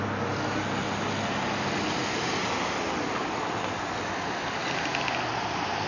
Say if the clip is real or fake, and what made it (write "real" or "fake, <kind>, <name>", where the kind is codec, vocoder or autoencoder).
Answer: real